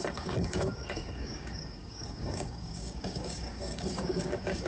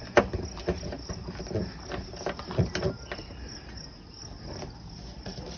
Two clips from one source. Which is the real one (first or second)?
second